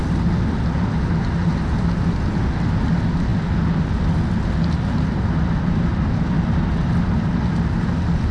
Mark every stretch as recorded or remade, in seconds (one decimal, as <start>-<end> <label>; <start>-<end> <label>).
0.0-8.3 recorded